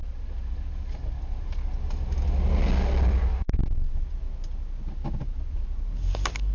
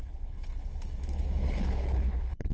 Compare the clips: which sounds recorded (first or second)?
first